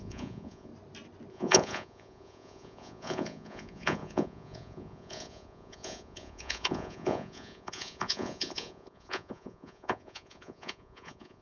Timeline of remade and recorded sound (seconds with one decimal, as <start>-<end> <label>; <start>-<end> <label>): 0.0-0.7 remade; 0.7-1.3 recorded; 1.3-11.4 remade